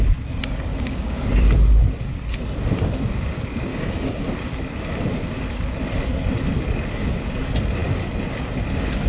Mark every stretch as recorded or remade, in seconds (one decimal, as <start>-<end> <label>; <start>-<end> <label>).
0.0-0.7 recorded; 0.7-1.2 remade; 1.2-3.7 recorded; 3.7-4.3 remade; 4.3-9.1 recorded